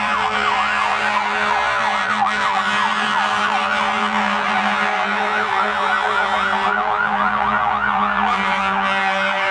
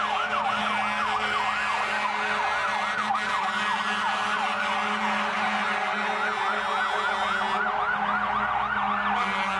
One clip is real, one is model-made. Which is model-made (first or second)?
first